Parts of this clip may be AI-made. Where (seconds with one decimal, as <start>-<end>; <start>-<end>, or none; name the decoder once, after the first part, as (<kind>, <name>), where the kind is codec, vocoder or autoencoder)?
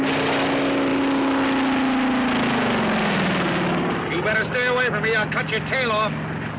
none